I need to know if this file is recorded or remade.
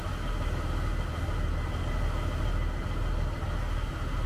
recorded